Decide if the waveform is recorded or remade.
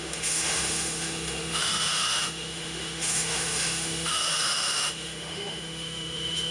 remade